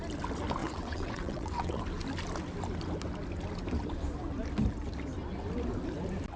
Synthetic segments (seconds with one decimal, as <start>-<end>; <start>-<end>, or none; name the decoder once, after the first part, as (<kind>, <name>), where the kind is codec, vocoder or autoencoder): 0.6-1.8 (vocoder, WaveNeXt)